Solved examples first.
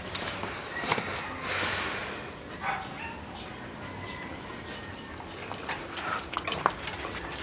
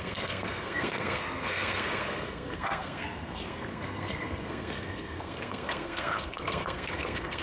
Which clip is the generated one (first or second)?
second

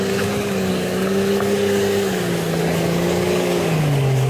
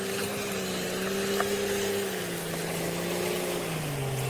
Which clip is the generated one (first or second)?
first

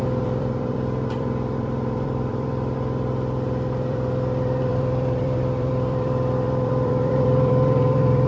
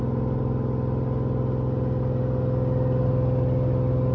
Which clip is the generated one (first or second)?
first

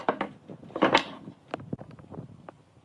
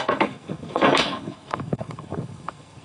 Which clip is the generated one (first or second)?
second